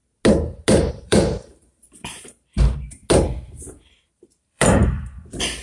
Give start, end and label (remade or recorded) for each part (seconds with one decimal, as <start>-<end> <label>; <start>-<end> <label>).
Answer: 0.0-0.9 recorded; 0.9-3.0 remade; 3.0-4.1 recorded; 4.1-4.8 remade; 4.8-5.6 recorded